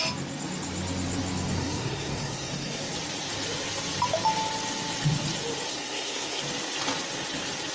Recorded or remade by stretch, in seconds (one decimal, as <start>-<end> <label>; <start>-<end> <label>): 0.0-1.5 recorded; 1.5-2.8 remade; 2.8-5.7 recorded; 5.7-6.4 remade; 6.4-7.7 recorded